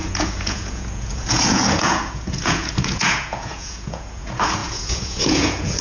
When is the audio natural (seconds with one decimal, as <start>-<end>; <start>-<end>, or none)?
none